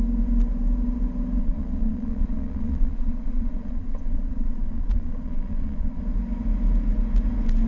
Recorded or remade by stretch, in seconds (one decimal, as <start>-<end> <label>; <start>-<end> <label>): 0.0-1.4 recorded; 1.4-6.0 remade; 6.0-7.7 recorded